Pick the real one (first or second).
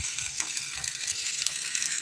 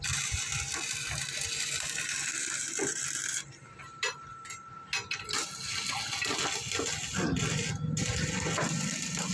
second